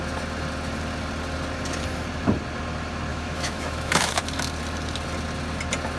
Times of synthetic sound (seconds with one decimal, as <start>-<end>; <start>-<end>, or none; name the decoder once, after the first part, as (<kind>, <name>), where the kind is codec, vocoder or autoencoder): 3.1-4.2 (autoencoder, DAC-VAE)